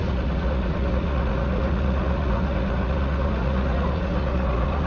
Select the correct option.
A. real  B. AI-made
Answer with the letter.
B